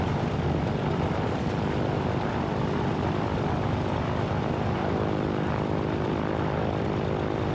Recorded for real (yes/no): no